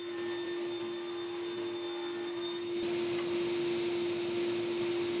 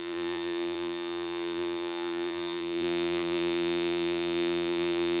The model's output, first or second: second